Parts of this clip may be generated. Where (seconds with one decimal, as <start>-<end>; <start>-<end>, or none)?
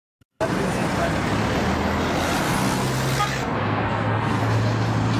3.4-4.4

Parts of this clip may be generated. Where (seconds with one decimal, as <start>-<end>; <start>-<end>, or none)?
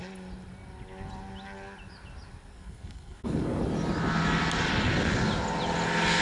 2.5-3.6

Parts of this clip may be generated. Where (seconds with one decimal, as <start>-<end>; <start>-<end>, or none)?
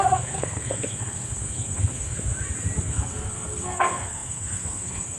0.0-2.3; 2.8-5.2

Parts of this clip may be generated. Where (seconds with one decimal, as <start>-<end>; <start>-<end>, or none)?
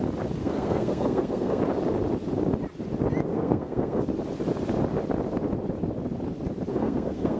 0.4-1.6; 3.3-4.0; 6.7-7.4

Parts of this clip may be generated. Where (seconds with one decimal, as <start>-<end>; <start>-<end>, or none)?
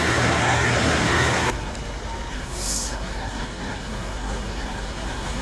0.0-1.7; 2.3-5.4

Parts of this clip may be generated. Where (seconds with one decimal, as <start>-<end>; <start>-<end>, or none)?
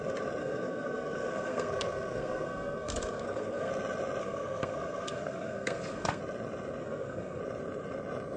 0.4-3.7; 4.2-6.2; 6.8-7.4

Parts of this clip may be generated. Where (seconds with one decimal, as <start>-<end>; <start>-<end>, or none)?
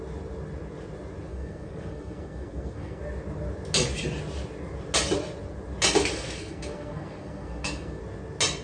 1.3-3.0; 6.1-8.0